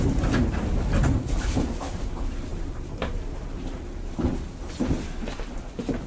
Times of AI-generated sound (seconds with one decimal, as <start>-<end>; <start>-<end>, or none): 2.5-4.2